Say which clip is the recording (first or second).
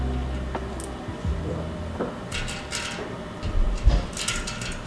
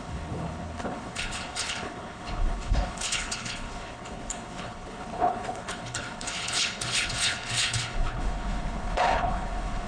first